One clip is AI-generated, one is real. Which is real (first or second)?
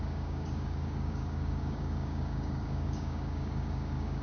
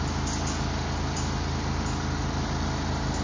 second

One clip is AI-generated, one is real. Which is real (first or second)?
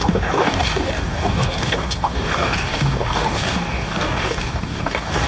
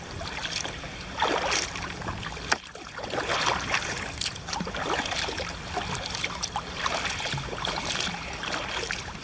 second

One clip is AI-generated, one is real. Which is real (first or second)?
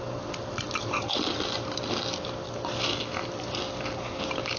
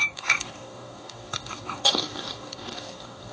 first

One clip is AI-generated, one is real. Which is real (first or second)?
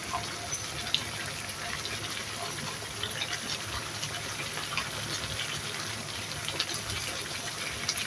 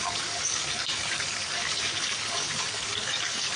first